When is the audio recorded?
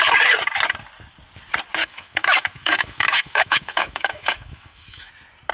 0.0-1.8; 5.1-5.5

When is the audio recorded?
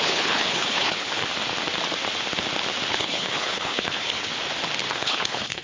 1.2-2.9; 4.3-4.9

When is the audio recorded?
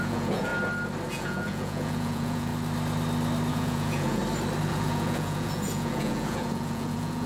0.5-1.1; 2.5-3.5; 4.2-4.7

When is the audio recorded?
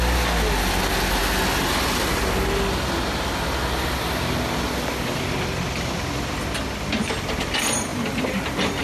0.0-8.8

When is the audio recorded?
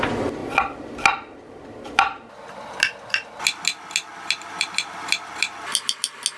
0.0-6.4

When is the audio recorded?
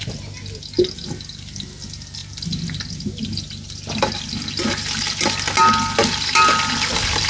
0.0-7.3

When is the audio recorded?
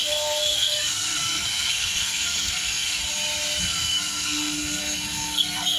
3.0-3.6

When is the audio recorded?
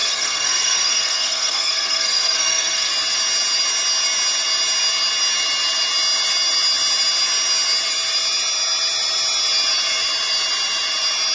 2.9-11.3